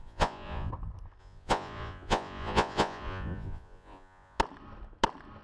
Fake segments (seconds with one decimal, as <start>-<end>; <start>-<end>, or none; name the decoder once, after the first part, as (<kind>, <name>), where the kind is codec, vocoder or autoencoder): 0.0-0.7 (vocoder, Vocos); 1.2-4.4